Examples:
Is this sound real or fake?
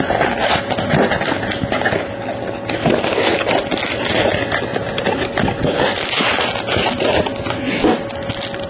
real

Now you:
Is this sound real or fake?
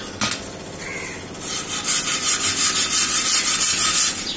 real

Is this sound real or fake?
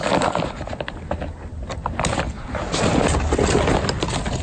real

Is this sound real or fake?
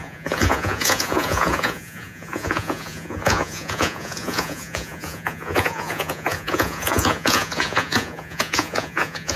fake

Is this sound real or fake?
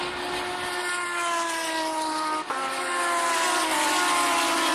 real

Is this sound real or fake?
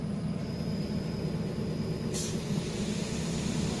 real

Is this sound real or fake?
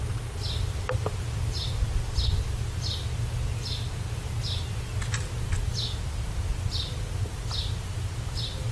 real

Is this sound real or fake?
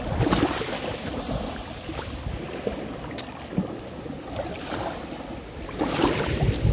real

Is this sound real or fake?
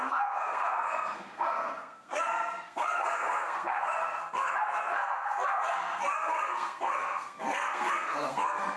fake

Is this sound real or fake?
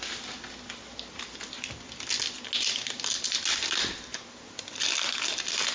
real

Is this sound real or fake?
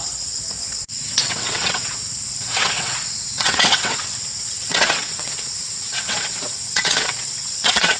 fake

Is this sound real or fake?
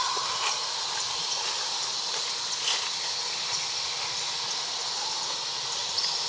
real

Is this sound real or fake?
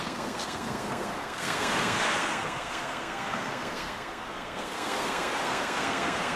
fake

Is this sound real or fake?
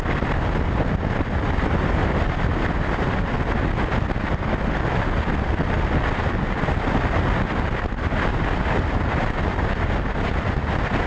real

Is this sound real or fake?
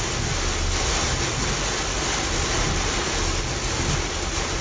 real